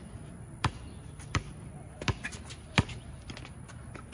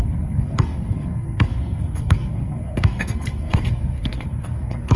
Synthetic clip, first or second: second